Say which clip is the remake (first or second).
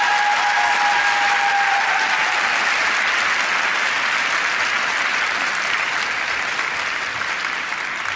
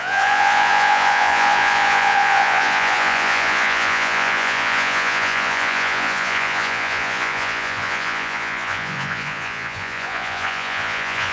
second